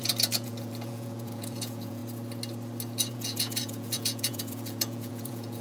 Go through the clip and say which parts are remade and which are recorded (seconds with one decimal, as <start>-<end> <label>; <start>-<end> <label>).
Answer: 0.0-2.0 remade; 2.0-3.1 recorded; 3.1-5.6 remade